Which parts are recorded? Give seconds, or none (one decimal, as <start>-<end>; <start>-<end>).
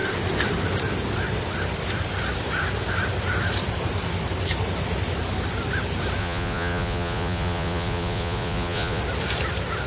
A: 0.0-6.2; 9.0-9.9